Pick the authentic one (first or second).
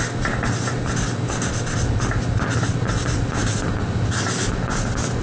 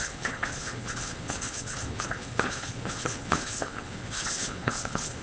first